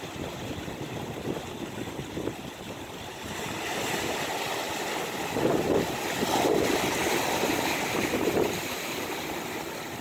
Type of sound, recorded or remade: recorded